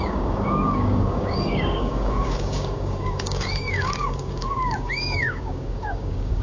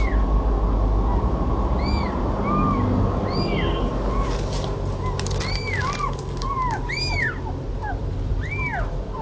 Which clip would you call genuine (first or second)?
second